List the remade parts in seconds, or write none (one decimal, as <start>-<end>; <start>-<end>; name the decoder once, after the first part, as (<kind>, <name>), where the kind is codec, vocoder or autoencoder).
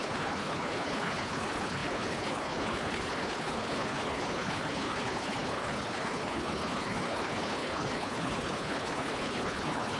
0.0-10.0 (codec, HILCodec)